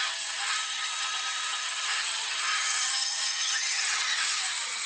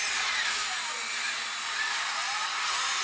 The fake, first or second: first